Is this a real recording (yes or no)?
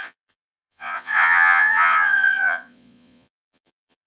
no